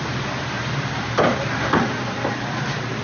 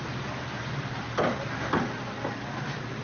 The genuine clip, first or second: second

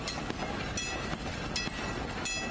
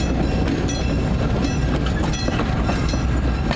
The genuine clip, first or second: first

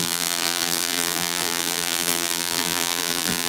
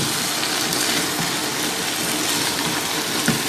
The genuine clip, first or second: second